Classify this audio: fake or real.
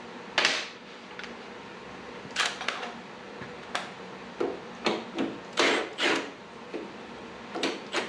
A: real